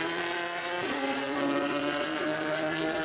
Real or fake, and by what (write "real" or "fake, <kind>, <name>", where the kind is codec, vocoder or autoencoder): fake, vocoder, Vocos